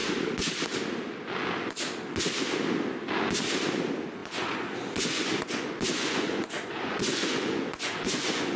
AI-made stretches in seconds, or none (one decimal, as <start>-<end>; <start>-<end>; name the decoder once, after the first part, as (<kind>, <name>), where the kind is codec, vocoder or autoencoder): 4.2-8.6 (vocoder, Vocos)